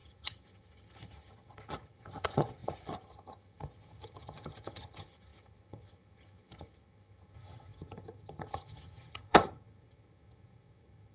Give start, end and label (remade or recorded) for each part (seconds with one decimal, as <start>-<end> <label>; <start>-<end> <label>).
0.0-11.1 remade